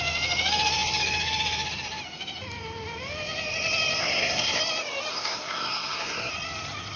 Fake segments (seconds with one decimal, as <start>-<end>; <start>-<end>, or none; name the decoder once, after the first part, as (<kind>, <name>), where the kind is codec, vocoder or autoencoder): 4.0-4.6 (codec, SNAC); 5.1-6.3